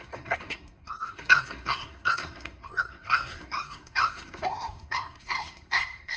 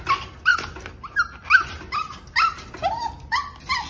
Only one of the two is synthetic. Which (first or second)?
first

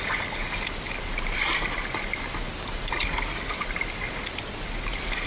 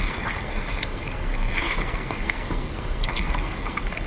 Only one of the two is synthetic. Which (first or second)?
second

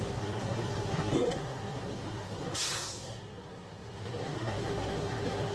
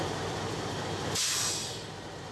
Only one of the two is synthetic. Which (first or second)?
first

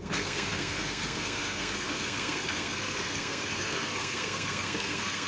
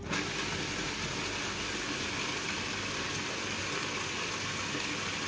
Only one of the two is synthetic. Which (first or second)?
first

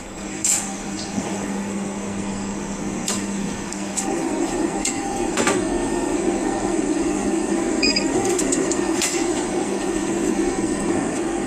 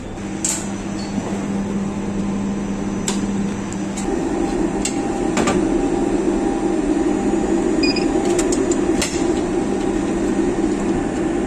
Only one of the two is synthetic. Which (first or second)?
first